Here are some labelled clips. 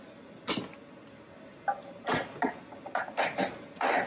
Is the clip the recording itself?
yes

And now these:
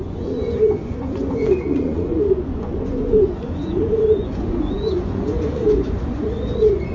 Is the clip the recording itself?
no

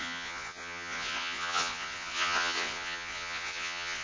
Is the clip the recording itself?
no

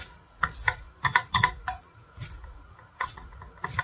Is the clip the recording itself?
no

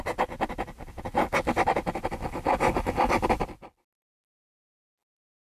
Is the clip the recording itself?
yes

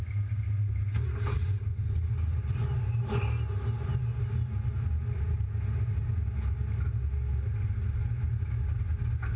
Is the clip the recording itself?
yes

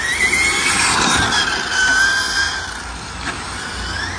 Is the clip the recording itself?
yes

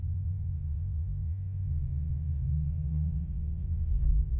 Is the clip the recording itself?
no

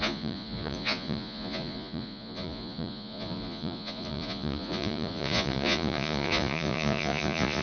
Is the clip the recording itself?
no